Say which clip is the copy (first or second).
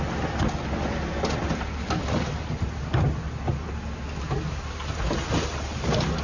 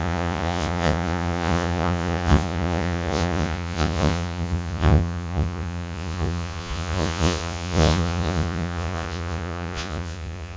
second